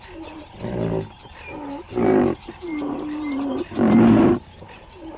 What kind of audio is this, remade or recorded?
remade